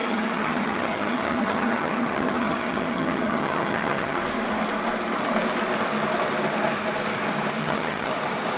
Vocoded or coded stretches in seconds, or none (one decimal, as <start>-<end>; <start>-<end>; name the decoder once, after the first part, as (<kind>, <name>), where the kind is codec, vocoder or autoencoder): 0.0-4.2 (vocoder, HiFi-GAN); 7.6-8.1